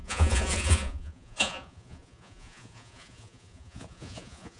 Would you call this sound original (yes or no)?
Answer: no